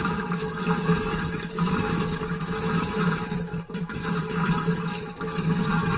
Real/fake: fake